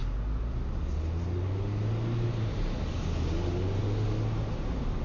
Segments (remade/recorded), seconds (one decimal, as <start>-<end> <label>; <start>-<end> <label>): 0.0-5.0 recorded